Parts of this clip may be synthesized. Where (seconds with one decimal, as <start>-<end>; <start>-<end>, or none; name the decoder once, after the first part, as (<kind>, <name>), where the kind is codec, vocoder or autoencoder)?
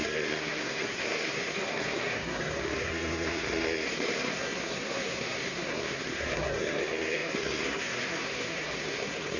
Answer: 0.0-9.4 (codec, SNAC)